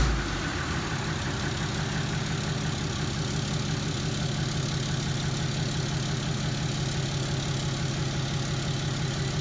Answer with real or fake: real